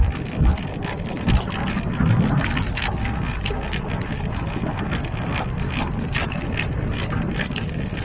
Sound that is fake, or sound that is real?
real